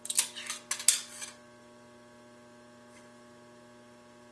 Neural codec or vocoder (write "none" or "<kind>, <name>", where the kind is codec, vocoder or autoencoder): none